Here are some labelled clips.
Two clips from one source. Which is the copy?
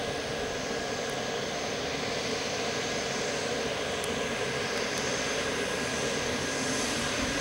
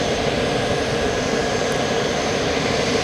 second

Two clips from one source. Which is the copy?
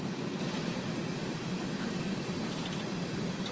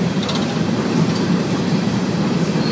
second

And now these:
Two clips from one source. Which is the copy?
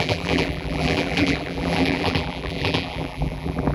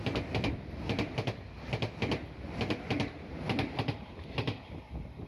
first